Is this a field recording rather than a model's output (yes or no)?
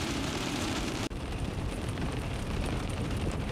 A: no